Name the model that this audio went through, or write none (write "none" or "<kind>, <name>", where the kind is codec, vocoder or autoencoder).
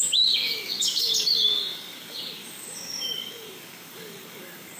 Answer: codec, DAC